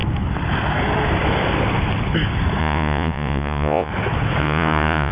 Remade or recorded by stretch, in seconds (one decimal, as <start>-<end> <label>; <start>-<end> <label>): 0.0-2.6 recorded; 2.6-3.9 remade; 3.9-4.4 recorded; 4.4-5.1 remade